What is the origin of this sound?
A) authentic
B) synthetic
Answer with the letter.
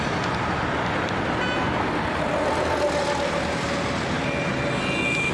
A